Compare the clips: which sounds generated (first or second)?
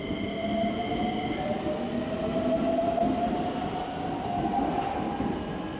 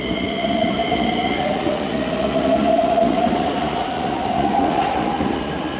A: second